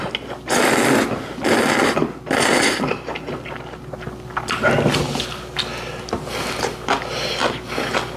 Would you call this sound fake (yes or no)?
no